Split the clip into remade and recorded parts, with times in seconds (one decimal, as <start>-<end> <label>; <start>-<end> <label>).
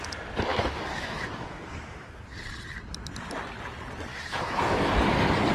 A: 0.0-0.5 recorded; 0.5-2.2 remade; 2.2-4.1 recorded; 4.1-4.9 remade; 4.9-5.5 recorded